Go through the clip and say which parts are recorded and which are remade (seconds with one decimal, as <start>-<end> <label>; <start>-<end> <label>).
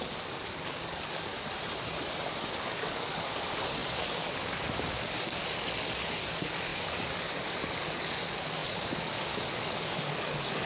0.0-1.3 remade; 1.3-2.4 recorded; 2.4-10.7 remade